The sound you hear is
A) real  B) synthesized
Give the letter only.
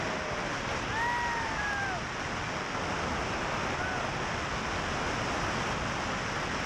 A